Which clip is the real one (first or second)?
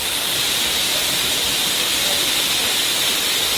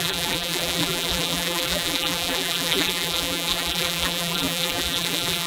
first